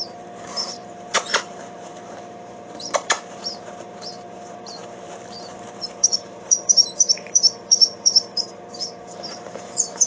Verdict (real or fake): fake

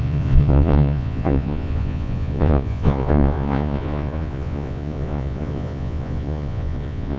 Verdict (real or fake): fake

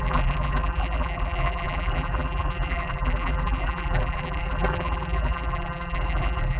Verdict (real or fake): fake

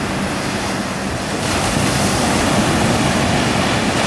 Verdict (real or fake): real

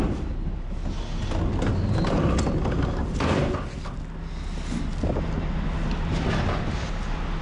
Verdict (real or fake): real